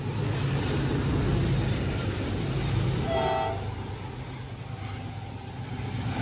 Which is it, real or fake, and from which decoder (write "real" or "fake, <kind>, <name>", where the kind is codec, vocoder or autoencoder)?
real